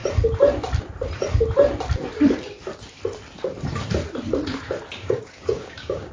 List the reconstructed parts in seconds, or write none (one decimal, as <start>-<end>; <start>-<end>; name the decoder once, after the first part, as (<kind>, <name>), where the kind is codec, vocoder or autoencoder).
5.0-6.1 (codec, DAC)